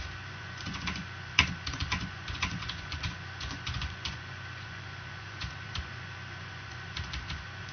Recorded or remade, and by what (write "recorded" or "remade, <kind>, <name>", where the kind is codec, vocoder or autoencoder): remade, vocoder, Vocos